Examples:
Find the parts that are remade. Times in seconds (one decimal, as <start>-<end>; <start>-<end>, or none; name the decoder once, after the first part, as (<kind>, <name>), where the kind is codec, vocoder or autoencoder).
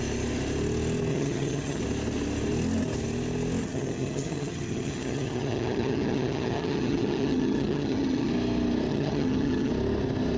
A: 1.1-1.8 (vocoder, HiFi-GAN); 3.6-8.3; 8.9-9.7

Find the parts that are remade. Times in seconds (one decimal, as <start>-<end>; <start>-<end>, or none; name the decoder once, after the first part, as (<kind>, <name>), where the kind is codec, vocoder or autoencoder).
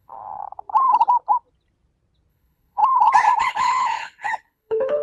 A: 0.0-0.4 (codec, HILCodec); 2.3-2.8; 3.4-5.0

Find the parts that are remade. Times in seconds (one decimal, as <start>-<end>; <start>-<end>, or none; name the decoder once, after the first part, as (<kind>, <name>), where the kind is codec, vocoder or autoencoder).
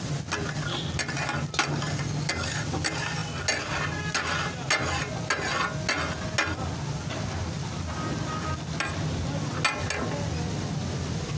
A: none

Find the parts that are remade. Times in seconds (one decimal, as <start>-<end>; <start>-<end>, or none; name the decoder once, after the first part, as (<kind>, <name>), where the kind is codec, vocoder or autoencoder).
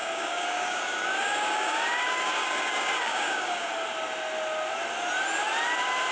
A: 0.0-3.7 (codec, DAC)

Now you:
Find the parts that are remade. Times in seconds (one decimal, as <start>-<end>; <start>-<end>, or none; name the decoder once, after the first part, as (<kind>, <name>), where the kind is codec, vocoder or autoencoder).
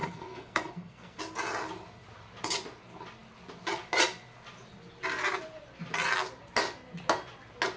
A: 0.0-1.2 (codec, SNAC)